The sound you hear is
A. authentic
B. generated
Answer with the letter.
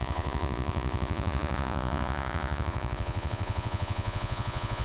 B